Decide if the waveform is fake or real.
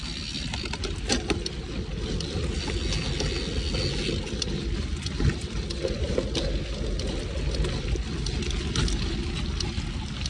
real